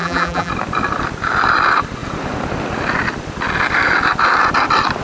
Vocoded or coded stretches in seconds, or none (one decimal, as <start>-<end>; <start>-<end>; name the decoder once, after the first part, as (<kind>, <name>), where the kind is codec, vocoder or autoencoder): 0.0-0.5 (vocoder, BigVGAN v2)